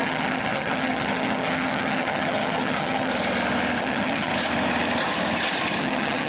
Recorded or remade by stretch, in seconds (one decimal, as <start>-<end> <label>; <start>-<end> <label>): 0.0-3.1 remade; 3.1-3.8 recorded; 3.8-4.3 remade; 4.3-5.8 recorded; 5.8-6.3 remade